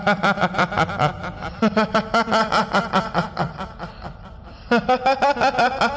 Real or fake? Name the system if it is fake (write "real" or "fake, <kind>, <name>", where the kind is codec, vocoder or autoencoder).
real